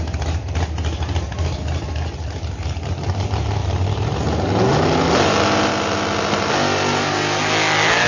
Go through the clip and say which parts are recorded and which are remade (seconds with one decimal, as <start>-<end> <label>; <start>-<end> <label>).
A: 0.0-8.1 recorded